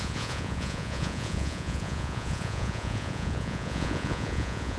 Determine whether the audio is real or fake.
fake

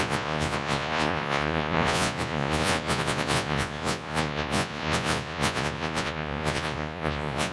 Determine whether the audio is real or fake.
fake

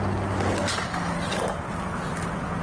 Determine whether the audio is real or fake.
real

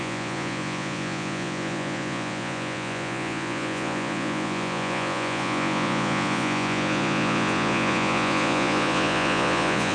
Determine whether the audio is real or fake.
fake